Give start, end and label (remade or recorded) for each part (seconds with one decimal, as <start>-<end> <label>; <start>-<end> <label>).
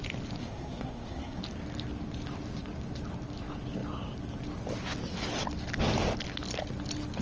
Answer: 0.0-0.4 recorded; 0.4-1.4 remade; 1.4-7.2 recorded